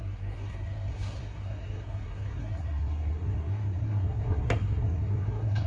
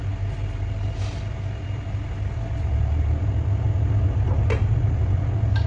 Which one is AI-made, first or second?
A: first